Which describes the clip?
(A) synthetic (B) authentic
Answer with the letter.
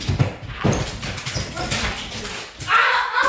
B